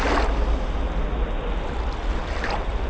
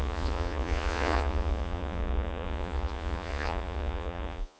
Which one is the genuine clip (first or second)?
first